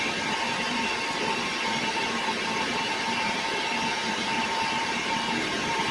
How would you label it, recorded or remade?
remade